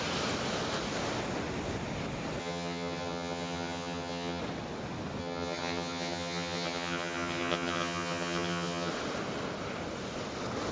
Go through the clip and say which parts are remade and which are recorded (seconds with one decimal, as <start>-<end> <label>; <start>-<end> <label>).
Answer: 0.0-2.4 recorded; 2.4-4.4 remade; 4.4-5.2 recorded; 5.2-8.9 remade; 8.9-10.7 recorded